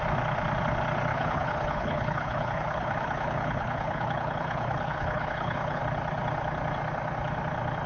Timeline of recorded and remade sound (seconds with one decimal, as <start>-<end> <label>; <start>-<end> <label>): 0.0-1.1 recorded; 1.1-5.8 remade; 5.8-7.9 recorded